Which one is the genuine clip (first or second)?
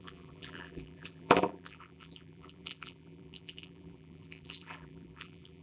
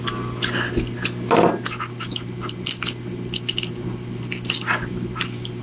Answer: second